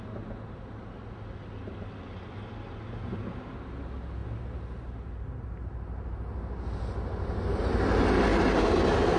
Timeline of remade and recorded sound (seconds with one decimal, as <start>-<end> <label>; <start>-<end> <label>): 0.0-9.2 recorded